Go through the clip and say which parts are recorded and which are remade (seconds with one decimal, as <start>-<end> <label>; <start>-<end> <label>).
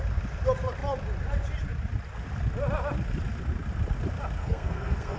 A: 0.0-4.4 recorded; 4.4-5.2 remade